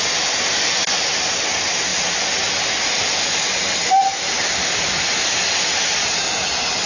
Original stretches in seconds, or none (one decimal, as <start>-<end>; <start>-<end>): 0.0-6.9